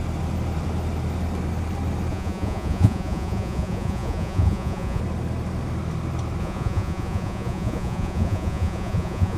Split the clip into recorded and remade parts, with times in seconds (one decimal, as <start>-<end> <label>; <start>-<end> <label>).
0.0-2.1 recorded; 2.1-5.0 remade; 5.0-6.4 recorded; 6.4-9.4 remade